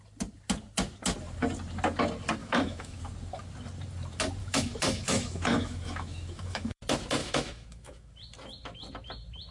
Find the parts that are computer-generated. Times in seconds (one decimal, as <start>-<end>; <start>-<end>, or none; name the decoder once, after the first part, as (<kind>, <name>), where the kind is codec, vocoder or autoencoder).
2.4-3.0 (autoencoder, DAC-VAE); 4.4-6.8; 7.2-8.1